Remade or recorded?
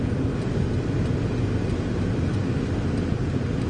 recorded